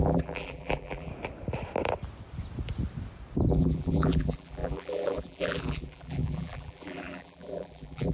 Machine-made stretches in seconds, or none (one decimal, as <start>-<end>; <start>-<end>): 0.0-1.1; 3.5-8.1